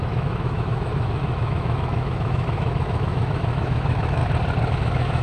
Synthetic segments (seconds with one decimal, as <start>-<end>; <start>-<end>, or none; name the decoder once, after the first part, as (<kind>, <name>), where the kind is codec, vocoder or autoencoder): 0.0-4.2 (autoencoder, DAC-VAE); 4.7-5.2